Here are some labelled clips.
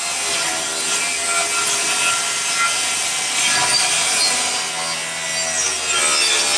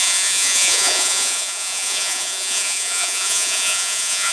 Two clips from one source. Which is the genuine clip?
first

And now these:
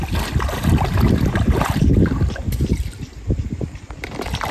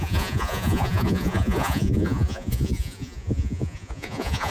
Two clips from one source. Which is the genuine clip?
first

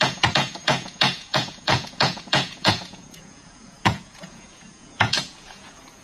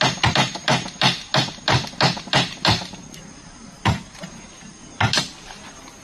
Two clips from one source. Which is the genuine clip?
second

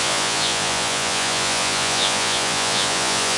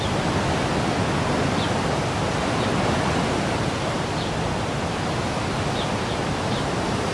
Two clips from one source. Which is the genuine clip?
second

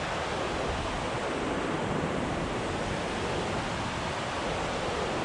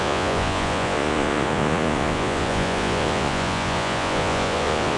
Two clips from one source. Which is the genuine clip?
first